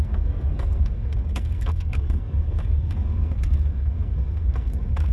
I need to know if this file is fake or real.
fake